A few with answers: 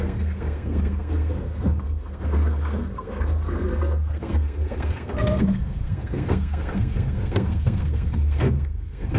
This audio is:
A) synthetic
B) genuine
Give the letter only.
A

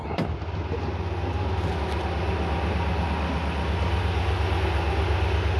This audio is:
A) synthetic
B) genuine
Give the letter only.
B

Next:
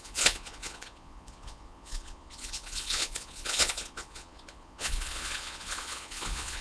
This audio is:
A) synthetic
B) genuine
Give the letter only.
A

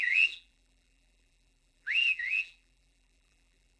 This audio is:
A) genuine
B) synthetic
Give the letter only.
B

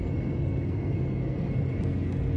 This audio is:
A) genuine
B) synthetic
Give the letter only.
B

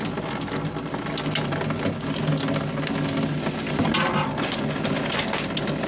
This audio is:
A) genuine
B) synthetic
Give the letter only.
A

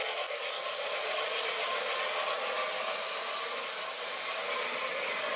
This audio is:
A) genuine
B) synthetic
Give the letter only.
A